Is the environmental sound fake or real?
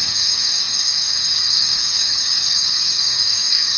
fake